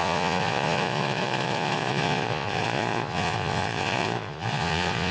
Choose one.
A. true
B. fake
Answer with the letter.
B